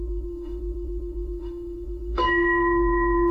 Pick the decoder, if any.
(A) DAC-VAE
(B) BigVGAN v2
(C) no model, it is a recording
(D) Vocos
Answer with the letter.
A